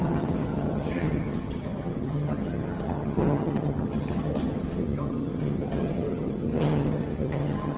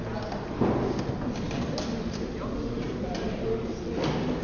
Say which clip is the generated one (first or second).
first